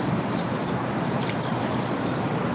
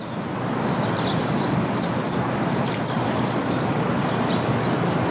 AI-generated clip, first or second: first